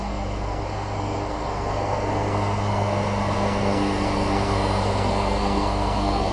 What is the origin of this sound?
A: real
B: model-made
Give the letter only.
B